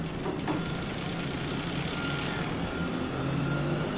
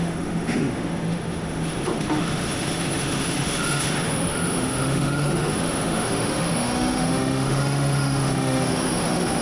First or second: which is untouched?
first